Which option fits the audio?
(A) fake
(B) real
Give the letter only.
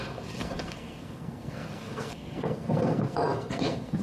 A